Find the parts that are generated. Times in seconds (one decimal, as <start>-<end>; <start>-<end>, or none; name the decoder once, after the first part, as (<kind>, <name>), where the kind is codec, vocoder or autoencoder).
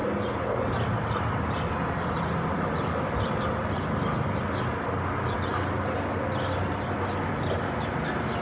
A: none